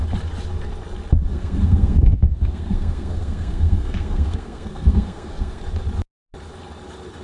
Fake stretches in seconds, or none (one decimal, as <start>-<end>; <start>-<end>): 1.3-5.6